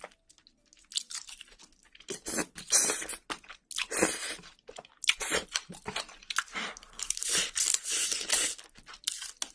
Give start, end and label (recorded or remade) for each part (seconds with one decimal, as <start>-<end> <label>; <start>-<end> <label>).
0.0-9.5 recorded